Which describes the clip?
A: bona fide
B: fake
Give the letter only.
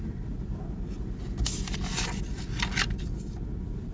A